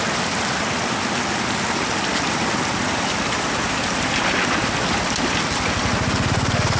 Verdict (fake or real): real